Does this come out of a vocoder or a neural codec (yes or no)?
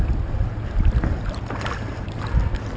no